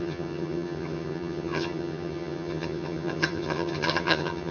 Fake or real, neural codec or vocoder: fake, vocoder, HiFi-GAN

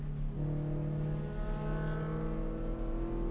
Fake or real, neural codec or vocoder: real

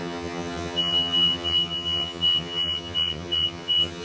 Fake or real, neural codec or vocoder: fake, vocoder, HiFi-GAN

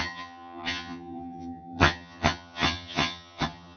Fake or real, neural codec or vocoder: fake, vocoder, HiFi-GAN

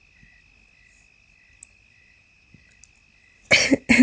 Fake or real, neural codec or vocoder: real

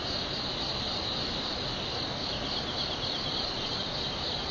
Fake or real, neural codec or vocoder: real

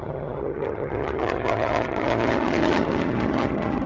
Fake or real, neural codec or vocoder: fake, vocoder, HiFi-GAN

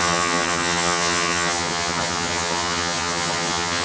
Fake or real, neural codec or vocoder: fake, vocoder, HiFi-GAN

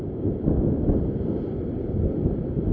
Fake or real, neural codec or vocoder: real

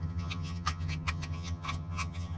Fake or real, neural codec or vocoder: fake, vocoder, HiFi-GAN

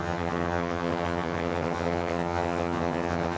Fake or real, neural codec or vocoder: fake, vocoder, HiFi-GAN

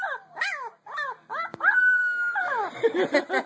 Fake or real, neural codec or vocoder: real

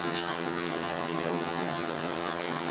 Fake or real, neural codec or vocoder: fake, vocoder, HiFi-GAN